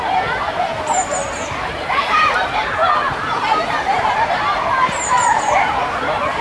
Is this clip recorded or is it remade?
remade